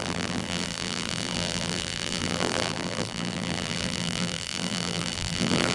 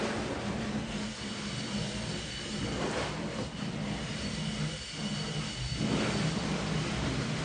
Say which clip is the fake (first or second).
first